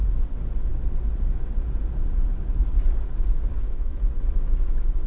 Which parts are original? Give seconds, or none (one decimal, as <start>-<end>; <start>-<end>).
0.0-3.5; 4.0-5.1